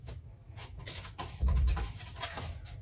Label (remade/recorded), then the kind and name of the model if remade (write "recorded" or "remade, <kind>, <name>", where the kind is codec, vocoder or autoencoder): remade, autoencoder, DAC-VAE